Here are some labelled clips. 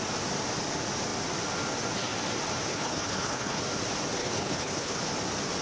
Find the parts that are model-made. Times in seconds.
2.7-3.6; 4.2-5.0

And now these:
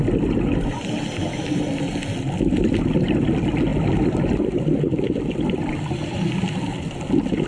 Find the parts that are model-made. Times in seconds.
none

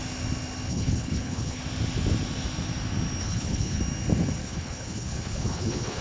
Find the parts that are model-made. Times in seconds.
0.7-1.6; 3.2-3.8; 4.4-6.0

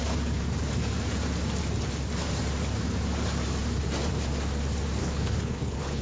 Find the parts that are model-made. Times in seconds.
5.0-6.0

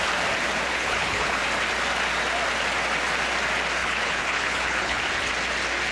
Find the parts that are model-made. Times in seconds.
0.7-1.4; 3.8-5.0